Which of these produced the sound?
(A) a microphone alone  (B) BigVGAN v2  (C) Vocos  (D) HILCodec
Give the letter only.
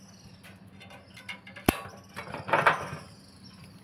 A